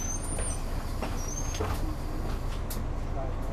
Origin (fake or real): real